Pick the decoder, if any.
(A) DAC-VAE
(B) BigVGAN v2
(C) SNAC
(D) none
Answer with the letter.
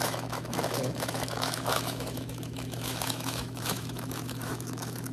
A